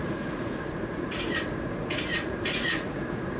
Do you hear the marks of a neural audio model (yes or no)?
yes